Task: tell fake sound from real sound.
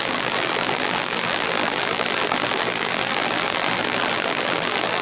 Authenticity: fake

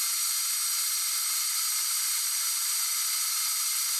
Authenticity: real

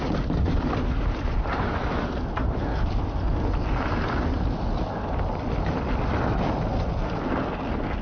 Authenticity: real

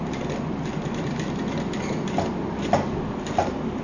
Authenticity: real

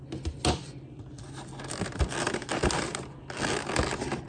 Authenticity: real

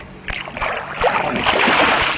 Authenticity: real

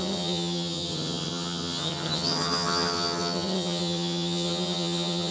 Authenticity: fake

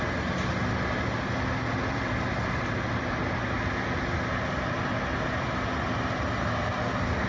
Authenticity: real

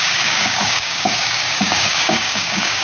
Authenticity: fake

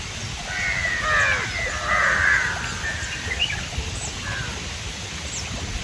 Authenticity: real